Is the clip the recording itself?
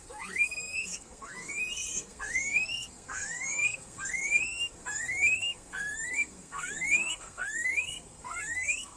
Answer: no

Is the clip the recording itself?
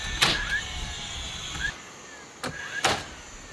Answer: yes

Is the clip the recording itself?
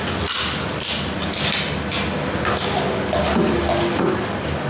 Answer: yes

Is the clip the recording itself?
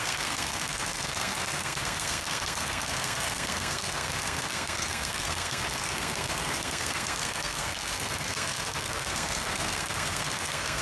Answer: no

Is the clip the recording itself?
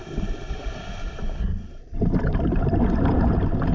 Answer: yes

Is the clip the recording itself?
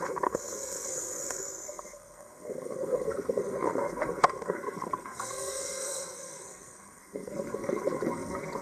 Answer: no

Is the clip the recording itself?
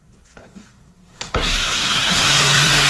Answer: no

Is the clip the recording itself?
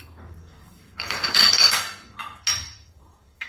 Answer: no